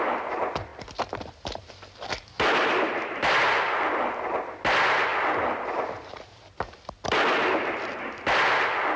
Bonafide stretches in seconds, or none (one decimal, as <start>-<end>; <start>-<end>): 0.0-9.0